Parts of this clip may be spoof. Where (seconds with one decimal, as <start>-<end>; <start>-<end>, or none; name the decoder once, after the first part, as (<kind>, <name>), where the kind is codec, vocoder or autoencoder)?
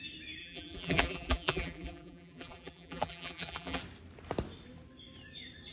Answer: 0.4-3.8 (vocoder, BigVGAN v2)